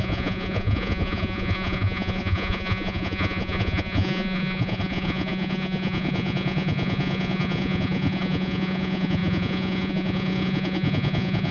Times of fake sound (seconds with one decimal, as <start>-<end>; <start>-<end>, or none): 0.0-11.5